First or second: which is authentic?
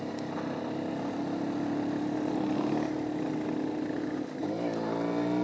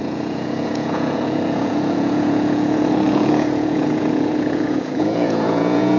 first